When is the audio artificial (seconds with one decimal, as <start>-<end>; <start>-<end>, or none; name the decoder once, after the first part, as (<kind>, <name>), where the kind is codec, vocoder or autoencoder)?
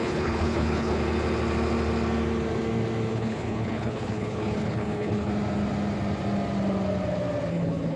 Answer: 0.0-1.0 (codec, HILCodec); 3.1-5.3; 7.5-8.0